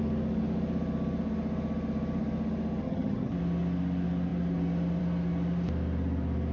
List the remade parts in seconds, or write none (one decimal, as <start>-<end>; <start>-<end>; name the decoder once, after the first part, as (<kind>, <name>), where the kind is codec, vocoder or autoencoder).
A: 2.8-3.3 (vocoder, HiFi-GAN)

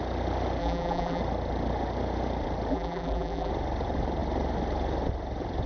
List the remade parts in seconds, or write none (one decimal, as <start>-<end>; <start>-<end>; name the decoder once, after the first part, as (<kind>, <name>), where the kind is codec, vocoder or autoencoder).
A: 0.6-1.2 (vocoder, BigVGAN v2); 2.7-3.5

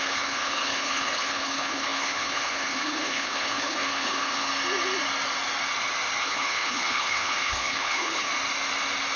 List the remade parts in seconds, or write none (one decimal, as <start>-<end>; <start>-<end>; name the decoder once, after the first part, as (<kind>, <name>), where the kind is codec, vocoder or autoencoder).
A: 0.0-4.5 (codec, HILCodec); 6.2-8.3

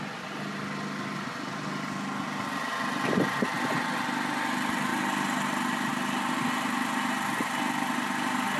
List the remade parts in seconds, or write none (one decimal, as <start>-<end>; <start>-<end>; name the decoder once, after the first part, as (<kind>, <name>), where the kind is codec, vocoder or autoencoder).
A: none

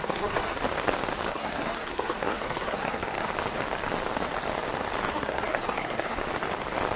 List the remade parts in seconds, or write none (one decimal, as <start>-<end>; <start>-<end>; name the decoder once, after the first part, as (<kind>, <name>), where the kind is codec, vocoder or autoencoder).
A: 0.0-0.6 (codec, SNAC); 1.3-3.3; 5.1-6.2

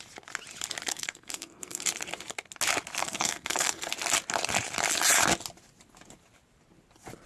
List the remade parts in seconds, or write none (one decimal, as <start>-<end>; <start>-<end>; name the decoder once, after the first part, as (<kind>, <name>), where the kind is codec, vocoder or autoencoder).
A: 0.9-1.8 (codec, SNAC); 3.0-3.9

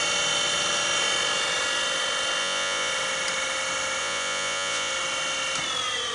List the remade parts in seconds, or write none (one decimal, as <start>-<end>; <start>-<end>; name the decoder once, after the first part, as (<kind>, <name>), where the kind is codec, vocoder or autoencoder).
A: 2.4-2.9 (vocoder, Vocos); 4.0-4.9